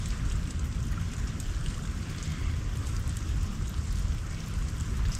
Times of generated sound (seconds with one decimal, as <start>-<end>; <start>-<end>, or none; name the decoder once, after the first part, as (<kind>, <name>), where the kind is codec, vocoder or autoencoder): none